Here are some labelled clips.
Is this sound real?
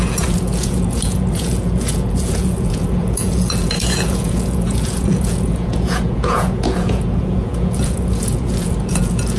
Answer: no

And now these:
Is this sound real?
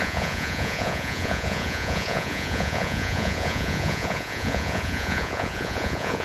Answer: no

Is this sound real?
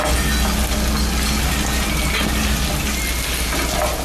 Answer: yes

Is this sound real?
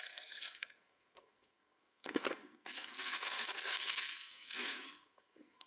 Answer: no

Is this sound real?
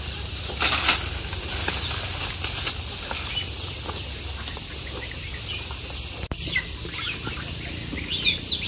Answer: yes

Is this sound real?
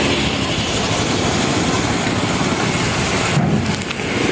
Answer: yes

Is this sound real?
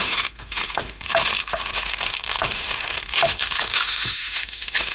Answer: no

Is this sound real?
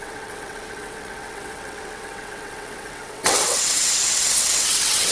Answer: no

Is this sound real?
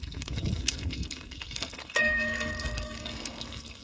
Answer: no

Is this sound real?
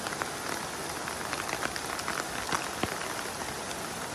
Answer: yes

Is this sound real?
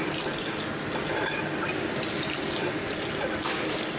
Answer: yes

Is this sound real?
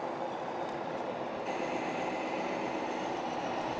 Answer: yes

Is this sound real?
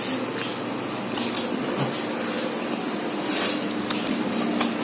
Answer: yes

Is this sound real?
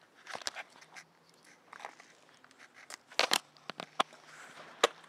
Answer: yes